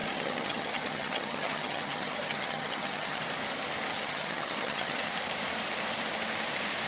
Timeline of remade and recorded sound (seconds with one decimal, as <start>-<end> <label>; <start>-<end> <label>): 0.0-3.2 remade; 3.2-3.9 recorded; 3.9-5.1 remade; 5.1-6.9 recorded